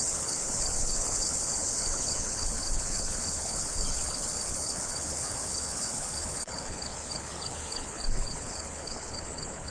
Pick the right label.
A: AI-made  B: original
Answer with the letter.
A